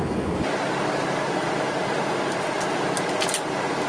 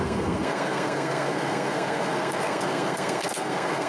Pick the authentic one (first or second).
first